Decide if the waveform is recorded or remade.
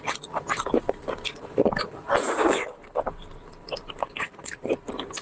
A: recorded